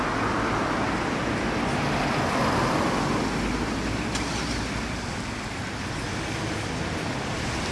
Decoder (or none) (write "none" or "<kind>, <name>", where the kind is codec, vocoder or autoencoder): none